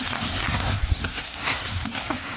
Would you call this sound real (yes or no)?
no